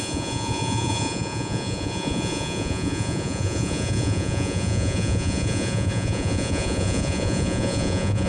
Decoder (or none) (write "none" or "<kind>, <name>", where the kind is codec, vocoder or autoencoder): vocoder, Vocos